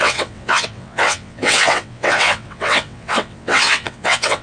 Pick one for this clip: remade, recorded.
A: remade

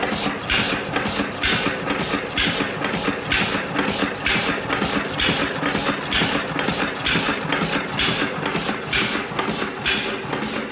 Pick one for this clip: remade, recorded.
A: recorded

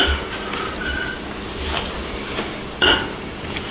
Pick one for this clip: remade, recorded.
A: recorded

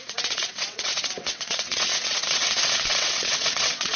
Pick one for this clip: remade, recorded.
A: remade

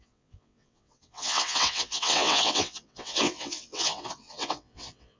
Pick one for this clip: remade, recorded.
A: remade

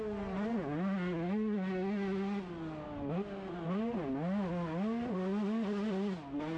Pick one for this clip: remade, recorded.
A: recorded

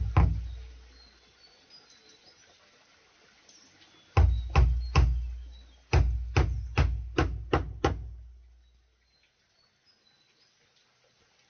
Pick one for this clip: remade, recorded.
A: recorded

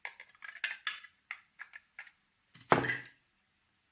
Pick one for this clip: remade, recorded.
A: recorded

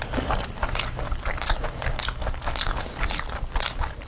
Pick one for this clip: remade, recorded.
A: recorded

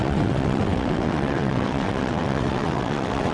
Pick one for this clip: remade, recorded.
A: remade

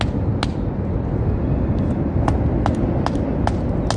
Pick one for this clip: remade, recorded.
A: recorded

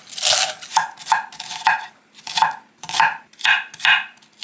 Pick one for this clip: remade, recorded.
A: recorded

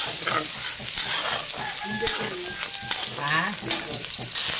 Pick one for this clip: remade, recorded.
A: recorded